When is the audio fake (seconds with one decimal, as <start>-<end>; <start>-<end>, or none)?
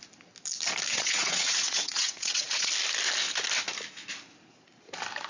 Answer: 0.9-2.7